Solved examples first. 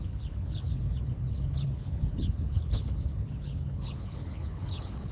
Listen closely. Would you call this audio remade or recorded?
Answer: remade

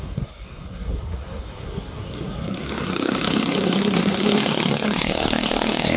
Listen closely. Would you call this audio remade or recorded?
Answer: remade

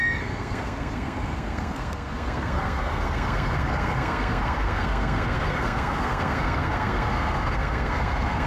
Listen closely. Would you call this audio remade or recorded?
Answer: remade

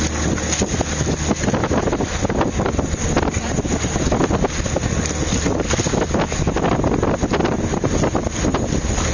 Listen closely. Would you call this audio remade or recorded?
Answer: recorded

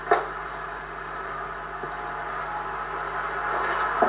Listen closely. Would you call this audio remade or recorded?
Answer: recorded